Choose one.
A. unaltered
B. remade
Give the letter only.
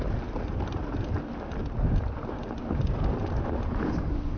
A